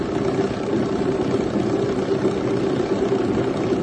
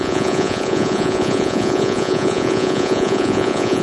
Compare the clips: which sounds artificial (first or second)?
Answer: second